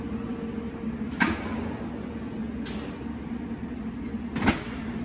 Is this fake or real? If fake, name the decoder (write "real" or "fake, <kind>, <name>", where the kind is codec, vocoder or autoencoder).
real